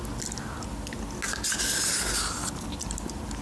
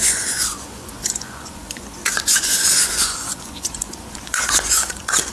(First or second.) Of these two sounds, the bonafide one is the first